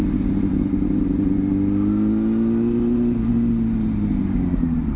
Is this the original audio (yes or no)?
yes